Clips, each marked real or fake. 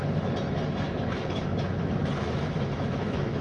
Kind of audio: fake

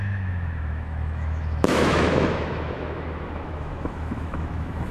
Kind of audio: fake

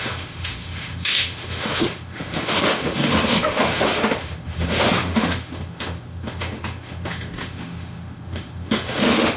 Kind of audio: fake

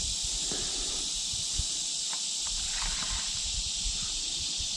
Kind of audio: real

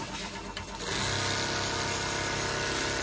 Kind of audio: real